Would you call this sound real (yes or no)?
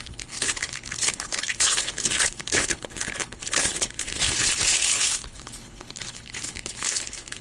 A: no